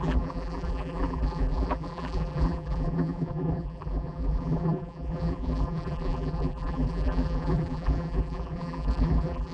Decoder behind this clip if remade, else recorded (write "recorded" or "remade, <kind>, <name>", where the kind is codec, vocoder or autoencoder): remade, vocoder, BigVGAN v2